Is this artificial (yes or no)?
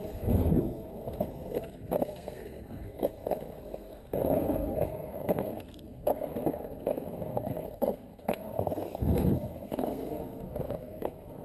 yes